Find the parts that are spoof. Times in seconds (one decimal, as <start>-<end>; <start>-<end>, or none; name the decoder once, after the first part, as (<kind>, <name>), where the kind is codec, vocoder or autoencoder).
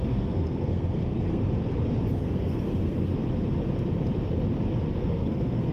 0.0-1.4 (codec, SNAC); 2.1-3.1; 5.1-5.7